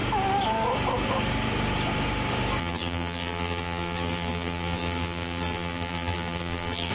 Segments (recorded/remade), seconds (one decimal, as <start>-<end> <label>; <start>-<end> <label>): 0.0-2.6 recorded; 2.6-6.9 remade